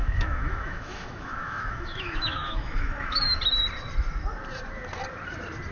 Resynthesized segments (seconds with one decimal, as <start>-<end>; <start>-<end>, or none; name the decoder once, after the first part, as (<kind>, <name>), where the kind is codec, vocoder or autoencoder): 0.0-3.4 (autoencoder, DAC-VAE)